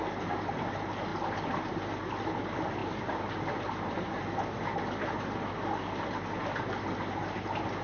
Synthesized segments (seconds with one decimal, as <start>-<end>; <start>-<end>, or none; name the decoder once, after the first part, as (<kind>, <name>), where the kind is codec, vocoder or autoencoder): none